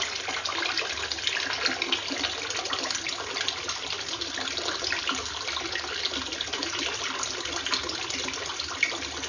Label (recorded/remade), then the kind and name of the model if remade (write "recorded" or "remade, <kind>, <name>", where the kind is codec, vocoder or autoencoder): recorded